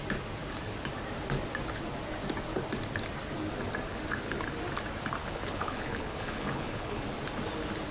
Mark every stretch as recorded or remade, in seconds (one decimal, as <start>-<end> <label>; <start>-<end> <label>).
0.0-5.2 recorded; 5.2-7.0 remade; 7.0-7.9 recorded